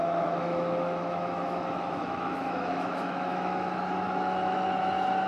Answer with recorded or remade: remade